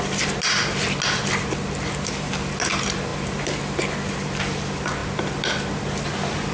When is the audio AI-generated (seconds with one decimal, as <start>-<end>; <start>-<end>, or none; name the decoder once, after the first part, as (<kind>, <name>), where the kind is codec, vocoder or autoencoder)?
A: 5.0-5.7 (vocoder, BigVGAN v2)